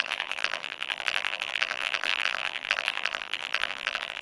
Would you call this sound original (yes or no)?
no